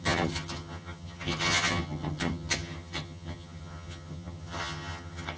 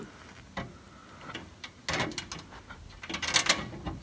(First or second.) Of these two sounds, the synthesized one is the first